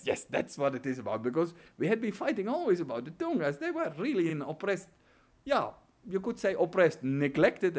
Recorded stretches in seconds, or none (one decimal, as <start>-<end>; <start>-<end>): 0.0-7.8